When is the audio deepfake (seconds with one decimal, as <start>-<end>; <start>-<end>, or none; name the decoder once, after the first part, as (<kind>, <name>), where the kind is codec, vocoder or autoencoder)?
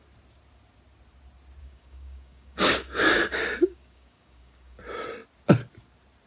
1.6-4.8 (codec, DAC)